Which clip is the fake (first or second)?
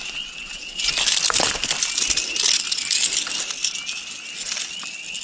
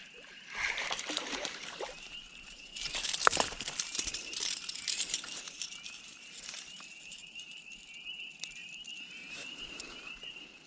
second